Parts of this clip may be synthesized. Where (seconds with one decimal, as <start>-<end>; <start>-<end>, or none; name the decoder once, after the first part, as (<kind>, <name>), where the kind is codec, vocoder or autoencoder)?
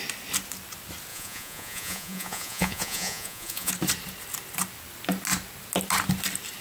1.1-3.7 (vocoder, Vocos)